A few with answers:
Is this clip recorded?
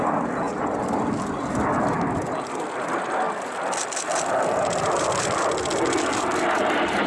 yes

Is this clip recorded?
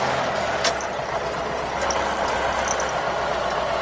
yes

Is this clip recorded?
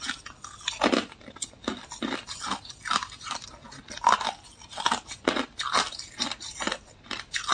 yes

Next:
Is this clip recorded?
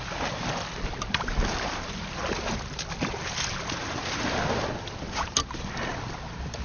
yes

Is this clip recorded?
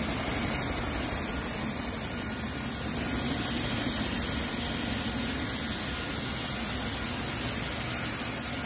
yes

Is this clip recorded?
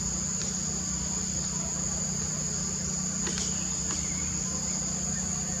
yes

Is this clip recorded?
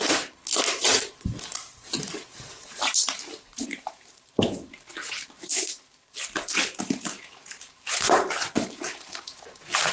no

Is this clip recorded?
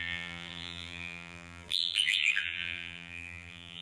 no